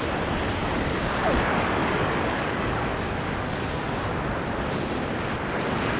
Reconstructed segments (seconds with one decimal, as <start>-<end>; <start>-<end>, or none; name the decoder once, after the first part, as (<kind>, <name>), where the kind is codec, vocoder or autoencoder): 0.6-3.9 (codec, DAC)